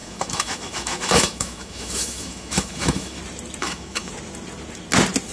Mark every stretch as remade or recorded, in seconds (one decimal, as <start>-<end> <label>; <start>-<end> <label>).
0.0-3.2 remade; 3.2-3.6 recorded; 3.6-4.1 remade; 4.1-5.3 recorded